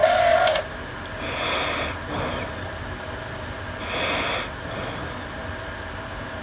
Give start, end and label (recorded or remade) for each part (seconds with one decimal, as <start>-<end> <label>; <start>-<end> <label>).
0.0-6.4 recorded